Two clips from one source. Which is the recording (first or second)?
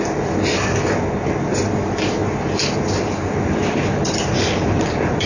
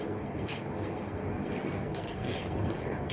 first